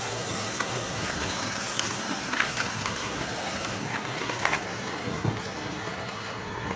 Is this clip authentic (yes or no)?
no